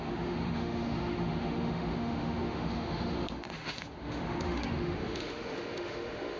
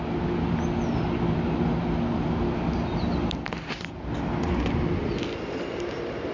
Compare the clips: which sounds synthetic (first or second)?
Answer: first